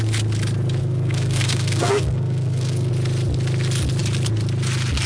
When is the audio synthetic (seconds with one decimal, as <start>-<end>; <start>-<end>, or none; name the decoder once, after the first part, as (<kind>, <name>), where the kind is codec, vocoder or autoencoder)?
0.8-2.9 (codec, SNAC)